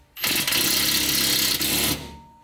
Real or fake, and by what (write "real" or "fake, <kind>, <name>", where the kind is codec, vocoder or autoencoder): real